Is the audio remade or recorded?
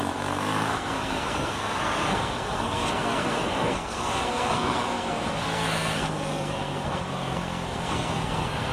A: remade